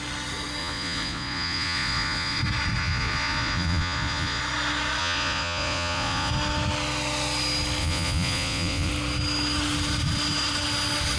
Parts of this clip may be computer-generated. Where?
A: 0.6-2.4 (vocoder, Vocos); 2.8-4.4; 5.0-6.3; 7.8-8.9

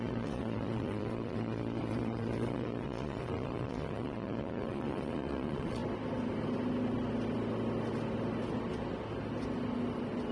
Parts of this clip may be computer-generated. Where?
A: 0.0-5.8 (vocoder, Vocos)

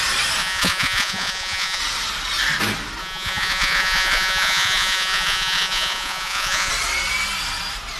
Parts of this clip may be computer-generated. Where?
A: 0.4-1.8 (vocoder, Vocos); 3.0-6.7

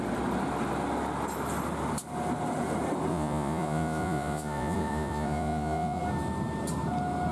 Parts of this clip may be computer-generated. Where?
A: 3.1-6.0 (vocoder, Vocos)

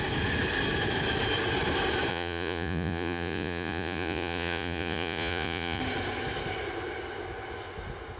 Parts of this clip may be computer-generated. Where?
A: 2.1-5.8 (vocoder, Vocos)

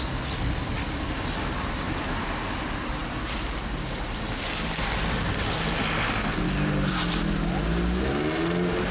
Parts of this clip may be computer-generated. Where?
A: none

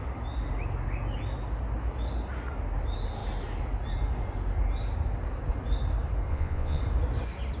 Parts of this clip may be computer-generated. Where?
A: 6.3-6.8 (vocoder, Vocos)